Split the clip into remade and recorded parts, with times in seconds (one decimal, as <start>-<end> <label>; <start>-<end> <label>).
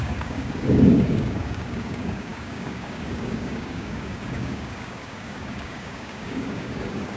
0.0-7.2 remade